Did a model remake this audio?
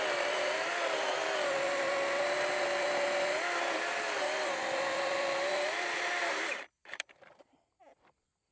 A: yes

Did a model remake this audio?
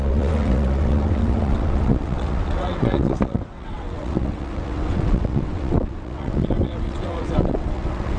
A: yes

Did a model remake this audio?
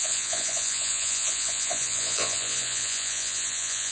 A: yes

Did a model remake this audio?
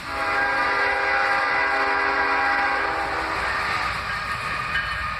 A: no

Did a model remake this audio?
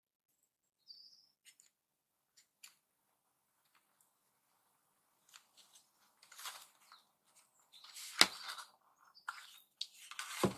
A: no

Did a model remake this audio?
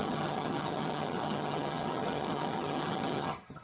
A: yes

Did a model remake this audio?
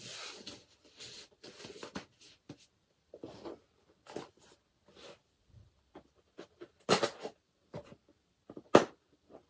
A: yes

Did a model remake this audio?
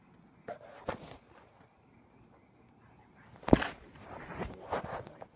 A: no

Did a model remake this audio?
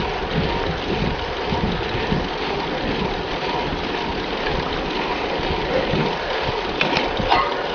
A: no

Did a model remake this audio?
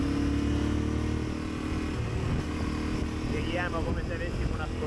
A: no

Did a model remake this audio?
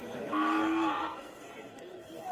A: yes